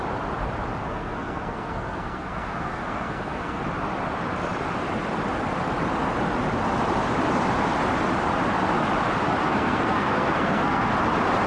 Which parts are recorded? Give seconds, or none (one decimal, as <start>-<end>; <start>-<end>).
0.0-0.8; 3.6-9.4; 10.9-11.5